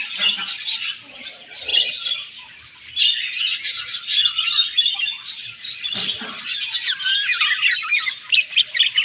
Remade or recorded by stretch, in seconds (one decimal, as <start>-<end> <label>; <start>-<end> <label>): 0.0-9.0 recorded